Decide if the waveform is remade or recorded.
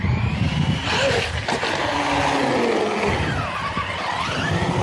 recorded